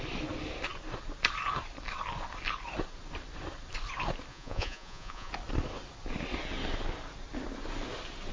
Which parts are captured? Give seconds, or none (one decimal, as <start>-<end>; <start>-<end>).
0.0-4.3; 5.3-8.3